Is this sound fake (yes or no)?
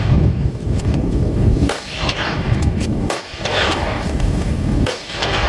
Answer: yes